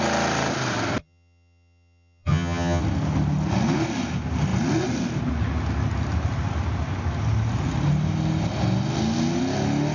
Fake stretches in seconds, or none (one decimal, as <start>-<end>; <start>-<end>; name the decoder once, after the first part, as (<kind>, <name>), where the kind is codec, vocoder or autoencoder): 1.0-2.8 (vocoder, HiFi-GAN)